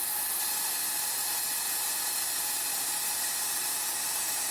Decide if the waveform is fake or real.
real